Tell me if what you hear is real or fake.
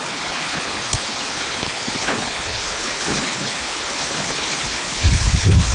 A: fake